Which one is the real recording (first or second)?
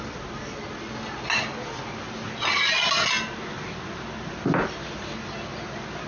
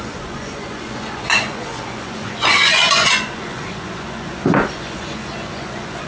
first